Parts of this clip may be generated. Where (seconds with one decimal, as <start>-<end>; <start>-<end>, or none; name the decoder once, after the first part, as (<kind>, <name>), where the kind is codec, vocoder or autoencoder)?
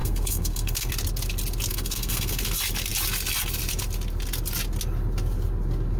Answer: 0.0-0.9 (codec, SNAC); 1.7-2.4